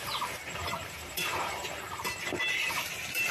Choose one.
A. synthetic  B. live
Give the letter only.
A